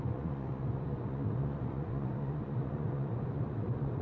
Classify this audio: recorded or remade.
remade